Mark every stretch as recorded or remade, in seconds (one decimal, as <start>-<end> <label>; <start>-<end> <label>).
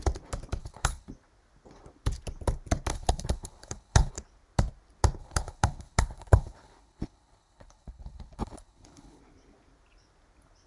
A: 0.0-0.6 recorded; 0.6-1.1 remade; 1.1-2.9 recorded; 2.9-4.1 remade; 4.1-5.2 recorded; 5.2-9.2 remade; 9.2-10.7 recorded